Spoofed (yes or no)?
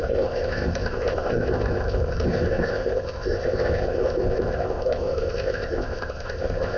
yes